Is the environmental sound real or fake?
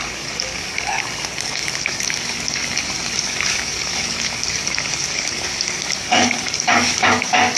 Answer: fake